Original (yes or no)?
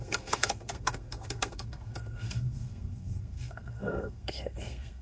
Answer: no